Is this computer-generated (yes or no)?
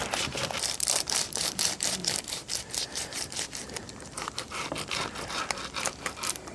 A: yes